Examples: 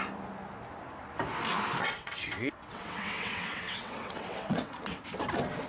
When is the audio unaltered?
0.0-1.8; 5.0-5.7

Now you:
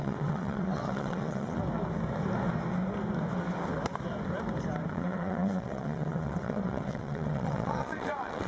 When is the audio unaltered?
1.6-4.9

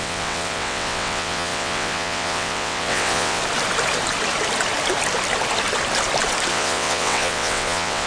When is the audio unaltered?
3.4-6.5

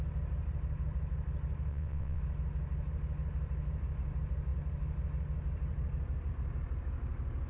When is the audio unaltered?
0.0-1.7; 2.2-7.5

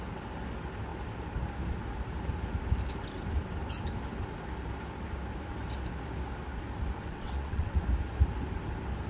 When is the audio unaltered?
0.0-7.1; 7.8-9.1

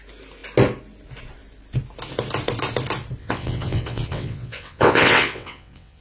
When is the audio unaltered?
0.0-3.2

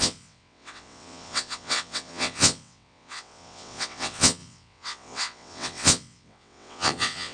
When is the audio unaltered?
none

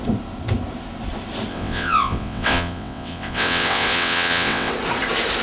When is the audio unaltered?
0.0-1.5; 4.7-5.4